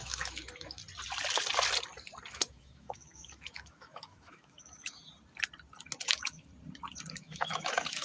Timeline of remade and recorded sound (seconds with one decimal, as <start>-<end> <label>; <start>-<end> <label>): 0.0-0.8 remade; 0.8-2.3 recorded; 2.3-5.0 remade; 5.0-6.0 recorded; 6.0-6.5 remade; 6.5-7.2 recorded; 7.2-8.0 remade